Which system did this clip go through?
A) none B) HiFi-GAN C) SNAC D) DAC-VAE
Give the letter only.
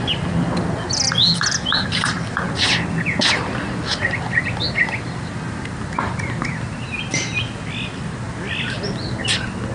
A